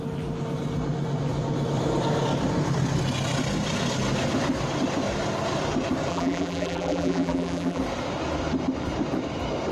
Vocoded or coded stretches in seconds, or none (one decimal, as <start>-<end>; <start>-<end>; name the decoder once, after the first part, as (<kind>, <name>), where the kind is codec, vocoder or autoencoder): 6.1-7.8 (vocoder, BigVGAN v2)